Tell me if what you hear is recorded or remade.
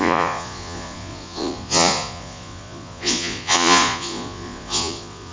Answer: remade